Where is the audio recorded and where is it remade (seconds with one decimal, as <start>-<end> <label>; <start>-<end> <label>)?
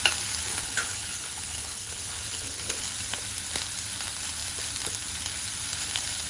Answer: 0.0-0.5 recorded; 0.5-2.8 remade; 2.8-6.3 recorded